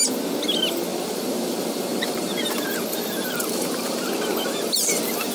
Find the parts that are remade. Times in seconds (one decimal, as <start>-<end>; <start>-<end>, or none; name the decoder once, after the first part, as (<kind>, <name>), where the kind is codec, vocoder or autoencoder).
0.9-4.1 (vocoder, BigVGAN v2)